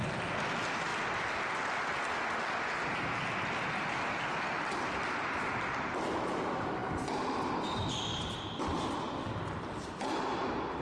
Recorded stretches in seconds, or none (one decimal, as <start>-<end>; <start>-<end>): 0.0-10.8